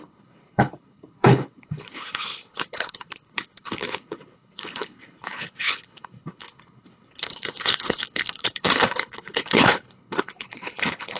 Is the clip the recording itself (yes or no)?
no